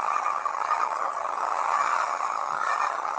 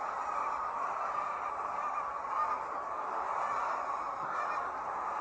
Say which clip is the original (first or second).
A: second